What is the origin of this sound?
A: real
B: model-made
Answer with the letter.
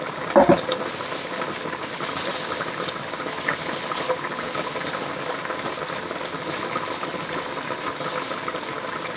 A